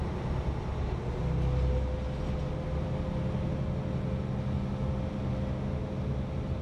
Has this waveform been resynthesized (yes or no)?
no